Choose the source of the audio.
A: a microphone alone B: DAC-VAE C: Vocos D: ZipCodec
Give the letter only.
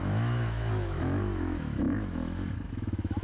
B